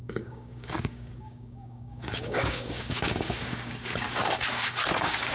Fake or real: fake